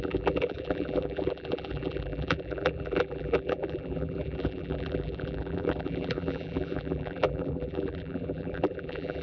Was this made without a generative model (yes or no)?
no